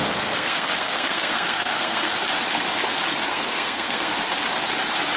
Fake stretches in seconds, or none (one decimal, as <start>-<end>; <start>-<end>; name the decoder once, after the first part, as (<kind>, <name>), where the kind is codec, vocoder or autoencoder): 0.0-2.1 (codec, SNAC); 3.3-4.1